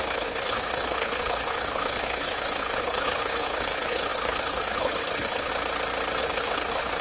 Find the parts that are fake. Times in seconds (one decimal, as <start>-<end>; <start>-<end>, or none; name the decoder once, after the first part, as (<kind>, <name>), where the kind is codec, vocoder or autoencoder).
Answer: 0.0-5.5 (codec, HILCodec); 6.2-7.0